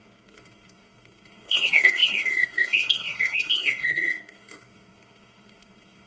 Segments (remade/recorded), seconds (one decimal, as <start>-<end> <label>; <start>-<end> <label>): 0.0-6.1 remade